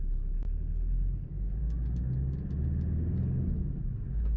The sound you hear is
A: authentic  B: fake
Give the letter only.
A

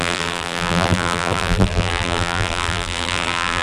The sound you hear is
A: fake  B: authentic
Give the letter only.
A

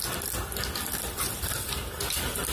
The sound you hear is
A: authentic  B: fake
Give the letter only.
A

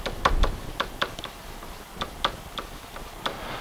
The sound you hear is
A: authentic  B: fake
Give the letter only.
A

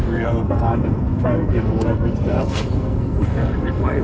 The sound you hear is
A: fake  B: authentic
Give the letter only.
A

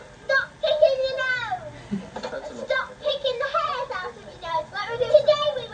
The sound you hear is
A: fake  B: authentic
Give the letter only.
B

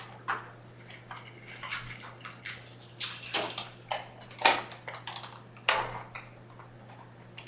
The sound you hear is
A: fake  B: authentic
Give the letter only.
B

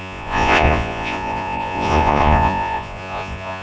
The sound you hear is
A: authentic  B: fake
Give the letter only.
B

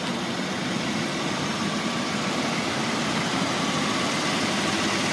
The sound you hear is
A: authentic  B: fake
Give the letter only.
A